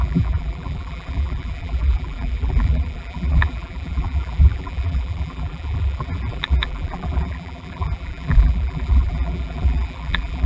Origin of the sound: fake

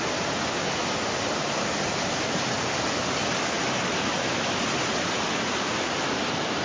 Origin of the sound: real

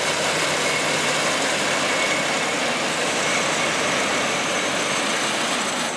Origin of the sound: real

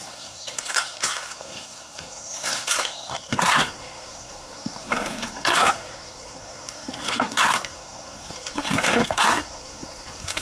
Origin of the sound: fake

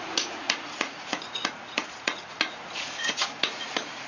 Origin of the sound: fake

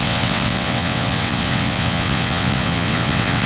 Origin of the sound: fake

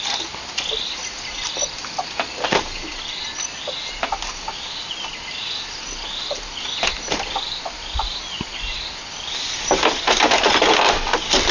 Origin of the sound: real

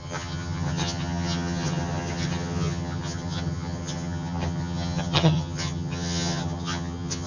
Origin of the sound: fake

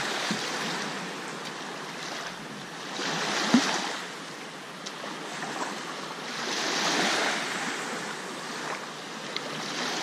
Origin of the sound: real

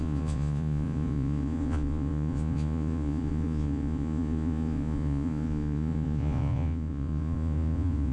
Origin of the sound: fake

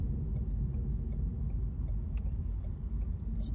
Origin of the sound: real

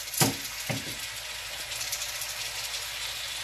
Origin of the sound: real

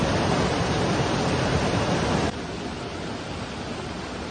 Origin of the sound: real